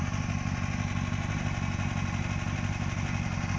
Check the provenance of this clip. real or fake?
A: real